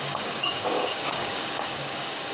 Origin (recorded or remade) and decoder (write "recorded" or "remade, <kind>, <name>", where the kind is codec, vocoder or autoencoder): remade, codec, DAC